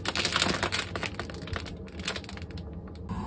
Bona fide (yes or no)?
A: yes